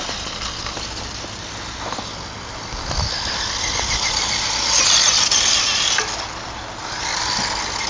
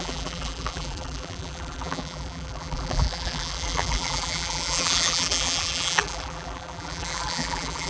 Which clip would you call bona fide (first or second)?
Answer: first